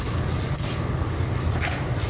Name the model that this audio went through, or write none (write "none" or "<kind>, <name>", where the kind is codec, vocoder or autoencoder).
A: none